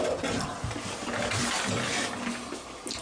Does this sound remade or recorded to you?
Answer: recorded